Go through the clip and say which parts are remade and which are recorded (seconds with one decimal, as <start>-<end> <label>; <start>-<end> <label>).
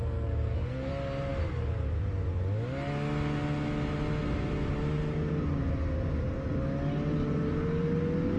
0.0-0.9 remade; 0.9-8.4 recorded